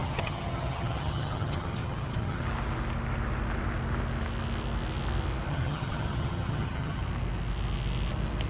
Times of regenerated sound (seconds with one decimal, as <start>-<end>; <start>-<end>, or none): 0.0-2.4; 5.5-7.0